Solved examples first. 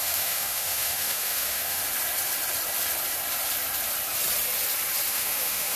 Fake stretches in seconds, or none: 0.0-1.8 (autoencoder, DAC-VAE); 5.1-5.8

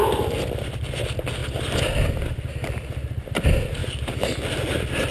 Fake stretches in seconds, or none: none

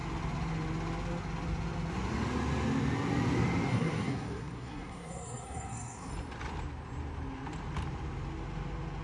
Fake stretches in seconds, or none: 3.7-6.1 (codec, SNAC)

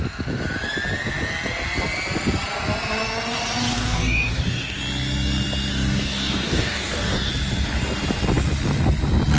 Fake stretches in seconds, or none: 3.7-4.8 (codec, DAC); 5.7-7.3

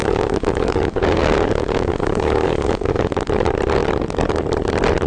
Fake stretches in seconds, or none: 0.0-3.1 (codec, DAC)

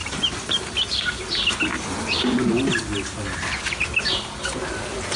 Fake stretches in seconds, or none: none